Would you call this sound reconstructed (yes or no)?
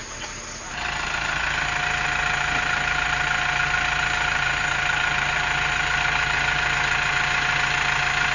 no